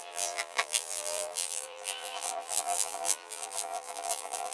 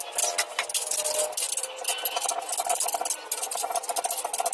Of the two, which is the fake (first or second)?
first